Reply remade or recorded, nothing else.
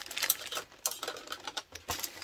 recorded